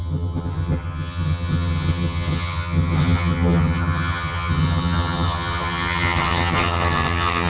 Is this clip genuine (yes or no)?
no